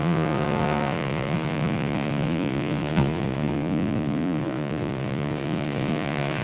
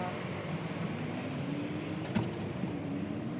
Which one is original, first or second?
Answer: second